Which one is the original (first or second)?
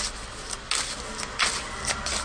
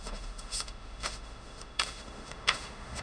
first